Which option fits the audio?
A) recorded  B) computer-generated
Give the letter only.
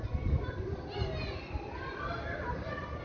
A